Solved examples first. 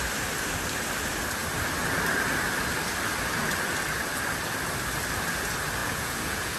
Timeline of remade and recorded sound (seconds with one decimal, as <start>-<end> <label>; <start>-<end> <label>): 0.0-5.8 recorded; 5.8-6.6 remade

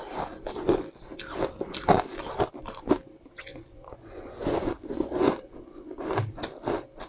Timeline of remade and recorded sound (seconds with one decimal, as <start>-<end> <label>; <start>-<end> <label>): 0.0-3.5 recorded; 3.5-6.0 remade; 6.0-7.1 recorded

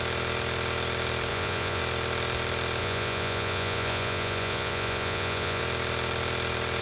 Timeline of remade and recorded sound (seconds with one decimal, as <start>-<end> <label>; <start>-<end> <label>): 0.0-1.3 recorded; 1.3-1.8 remade; 1.8-2.8 recorded; 2.8-5.6 remade; 5.6-6.8 recorded

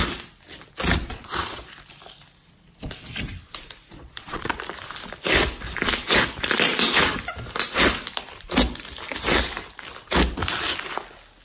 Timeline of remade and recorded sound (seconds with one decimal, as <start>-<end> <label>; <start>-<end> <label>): 0.0-1.0 recorded; 1.0-1.6 remade; 1.6-3.9 recorded; 3.9-4.5 remade; 4.5-11.4 recorded

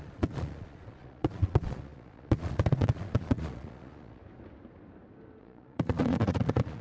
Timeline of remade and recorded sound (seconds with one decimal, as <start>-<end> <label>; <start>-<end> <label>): 0.0-4.2 remade; 4.2-5.4 recorded; 5.4-6.8 remade

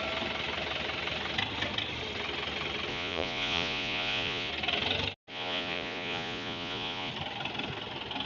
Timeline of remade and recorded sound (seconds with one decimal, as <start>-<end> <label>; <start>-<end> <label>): 0.0-2.9 recorded; 2.9-4.5 remade; 4.5-5.3 recorded; 5.3-7.1 remade; 7.1-8.3 recorded

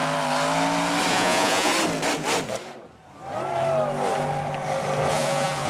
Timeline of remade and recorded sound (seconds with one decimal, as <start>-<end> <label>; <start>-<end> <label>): 0.0-1.1 recorded; 1.1-1.7 remade; 1.7-5.1 recorded; 5.1-5.7 remade

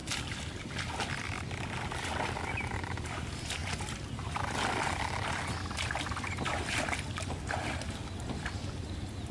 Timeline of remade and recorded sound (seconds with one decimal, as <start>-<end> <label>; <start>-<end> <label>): 0.0-9.3 recorded